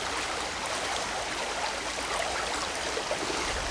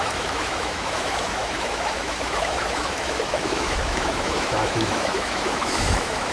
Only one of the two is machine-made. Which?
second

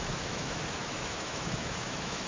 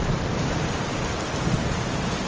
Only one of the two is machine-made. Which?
first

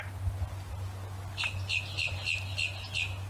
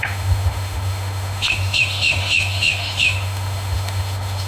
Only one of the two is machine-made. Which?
second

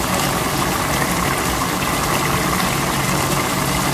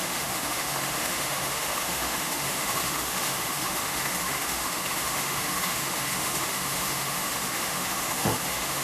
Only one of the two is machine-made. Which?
second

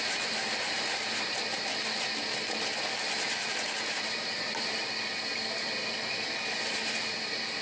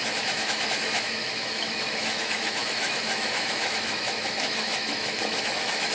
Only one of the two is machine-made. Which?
second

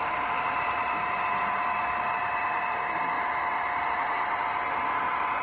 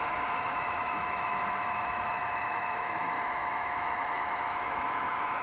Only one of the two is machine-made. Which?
second